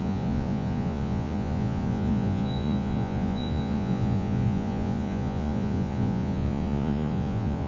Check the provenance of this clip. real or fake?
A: fake